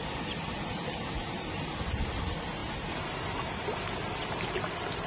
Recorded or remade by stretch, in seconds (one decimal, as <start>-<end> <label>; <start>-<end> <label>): 0.0-5.1 recorded